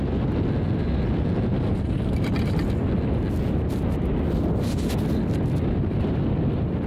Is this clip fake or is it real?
real